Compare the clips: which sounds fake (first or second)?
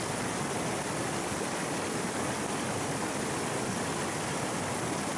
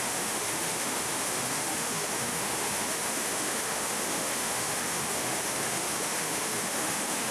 second